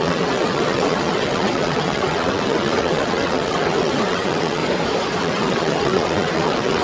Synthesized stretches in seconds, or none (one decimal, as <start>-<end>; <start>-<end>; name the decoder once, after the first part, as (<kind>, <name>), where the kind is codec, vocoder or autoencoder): 0.0-4.6 (vocoder, WaveNeXt); 5.2-6.8